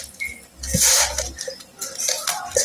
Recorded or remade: recorded